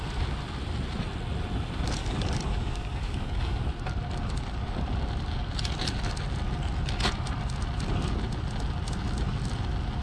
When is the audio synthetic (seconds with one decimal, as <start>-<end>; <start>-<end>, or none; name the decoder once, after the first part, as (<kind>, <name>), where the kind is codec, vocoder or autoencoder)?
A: 2.0-3.6 (codec, DAC)